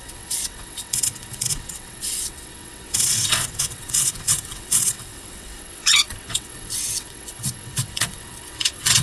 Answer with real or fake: fake